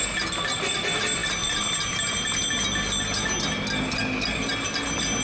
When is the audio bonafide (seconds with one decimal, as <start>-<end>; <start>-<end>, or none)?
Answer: 0.0-5.2

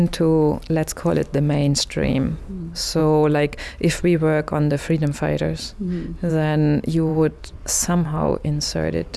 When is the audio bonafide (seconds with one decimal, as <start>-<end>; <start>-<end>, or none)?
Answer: 0.0-7.1; 8.3-9.2